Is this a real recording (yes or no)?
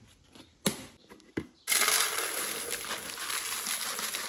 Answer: yes